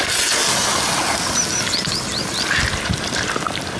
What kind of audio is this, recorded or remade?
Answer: recorded